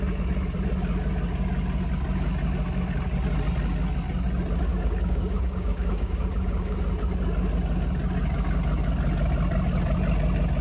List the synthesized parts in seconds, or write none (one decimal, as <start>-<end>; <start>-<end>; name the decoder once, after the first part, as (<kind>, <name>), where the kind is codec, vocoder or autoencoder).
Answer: 4.7-6.8 (codec, DAC)